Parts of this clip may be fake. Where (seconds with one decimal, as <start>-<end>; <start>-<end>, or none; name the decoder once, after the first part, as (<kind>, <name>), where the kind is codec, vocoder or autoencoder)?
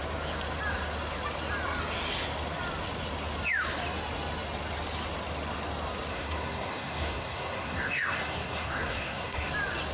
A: 6.1-9.5 (codec, SNAC)